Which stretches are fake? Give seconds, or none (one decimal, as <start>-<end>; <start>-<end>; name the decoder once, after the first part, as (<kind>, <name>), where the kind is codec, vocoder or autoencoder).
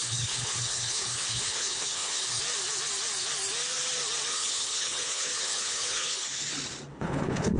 0.0-2.4 (codec, HILCodec); 4.3-6.4; 6.9-7.6